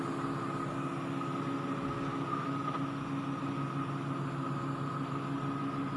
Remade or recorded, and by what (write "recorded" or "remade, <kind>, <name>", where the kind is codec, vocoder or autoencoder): recorded